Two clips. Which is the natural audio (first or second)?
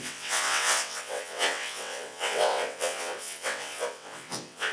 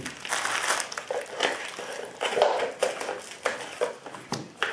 second